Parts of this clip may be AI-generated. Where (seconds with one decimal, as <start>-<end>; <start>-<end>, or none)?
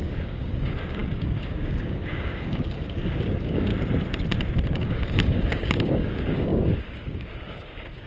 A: 0.0-3.7; 4.7-8.1